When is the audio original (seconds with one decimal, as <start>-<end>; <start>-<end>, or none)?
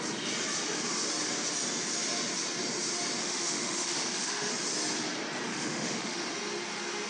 0.0-3.2; 4.5-5.5; 6.2-7.1